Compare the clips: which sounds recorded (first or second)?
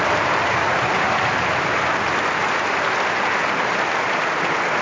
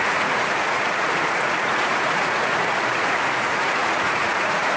first